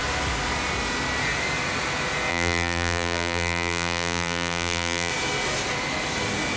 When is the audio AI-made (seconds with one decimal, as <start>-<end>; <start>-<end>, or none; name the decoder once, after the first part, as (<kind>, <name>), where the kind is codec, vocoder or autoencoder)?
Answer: 2.3-5.1 (vocoder, BigVGAN v2)